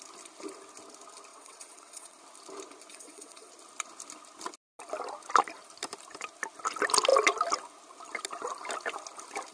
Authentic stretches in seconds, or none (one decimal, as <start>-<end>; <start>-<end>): 0.0-1.3; 2.2-2.9; 3.5-9.5